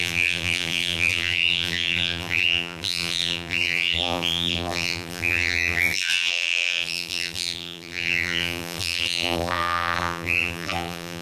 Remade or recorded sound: remade